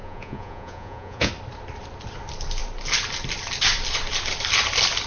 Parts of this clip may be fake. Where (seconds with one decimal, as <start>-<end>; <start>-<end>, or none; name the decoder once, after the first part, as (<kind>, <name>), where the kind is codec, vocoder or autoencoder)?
0.0-1.3 (vocoder, Vocos)